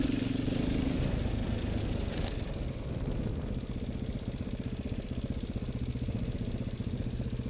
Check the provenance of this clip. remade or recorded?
recorded